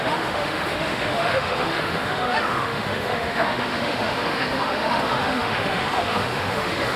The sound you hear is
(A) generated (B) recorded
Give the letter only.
A